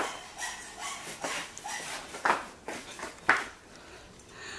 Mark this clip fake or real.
real